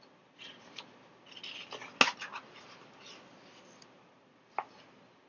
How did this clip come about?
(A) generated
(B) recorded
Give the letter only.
B